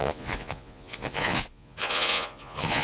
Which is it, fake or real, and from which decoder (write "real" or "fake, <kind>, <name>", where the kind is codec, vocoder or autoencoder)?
fake, vocoder, Vocos